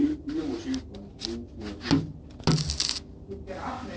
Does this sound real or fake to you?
real